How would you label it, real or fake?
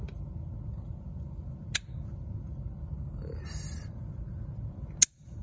real